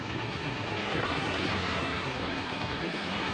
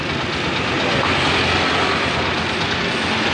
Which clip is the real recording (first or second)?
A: second